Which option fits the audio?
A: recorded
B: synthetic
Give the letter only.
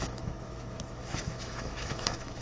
B